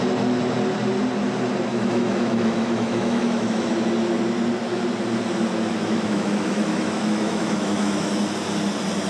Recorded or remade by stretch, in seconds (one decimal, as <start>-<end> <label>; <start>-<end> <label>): 0.0-1.7 recorded; 1.7-3.7 remade; 3.7-5.7 recorded; 5.7-8.1 remade; 8.1-9.1 recorded